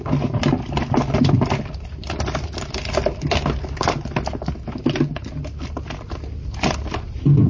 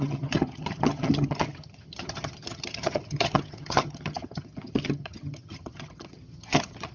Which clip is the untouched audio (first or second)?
first